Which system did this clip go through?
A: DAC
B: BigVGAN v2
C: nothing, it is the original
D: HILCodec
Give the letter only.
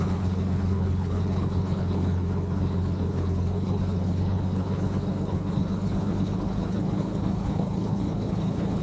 D